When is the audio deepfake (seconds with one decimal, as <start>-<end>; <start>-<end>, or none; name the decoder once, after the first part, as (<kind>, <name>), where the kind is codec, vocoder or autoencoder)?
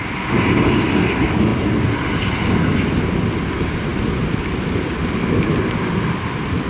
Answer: none